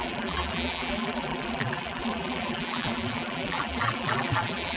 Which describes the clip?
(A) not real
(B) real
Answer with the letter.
A